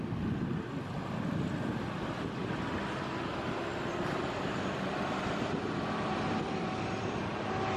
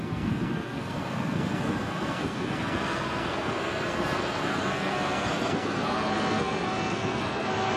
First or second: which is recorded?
first